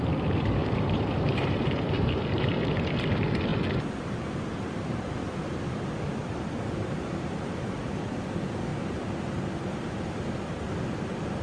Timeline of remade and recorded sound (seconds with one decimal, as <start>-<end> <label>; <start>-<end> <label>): 0.0-0.6 recorded; 0.6-2.2 remade; 2.2-8.7 recorded; 8.7-9.5 remade; 9.5-11.4 recorded